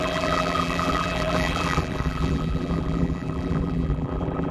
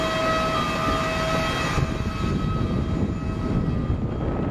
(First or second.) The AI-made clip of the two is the first